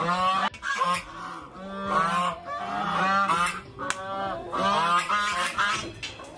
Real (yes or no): yes